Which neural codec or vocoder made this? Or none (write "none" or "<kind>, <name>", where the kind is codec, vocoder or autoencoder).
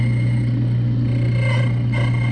none